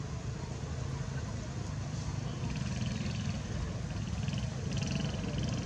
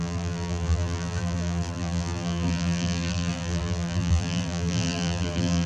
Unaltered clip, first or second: first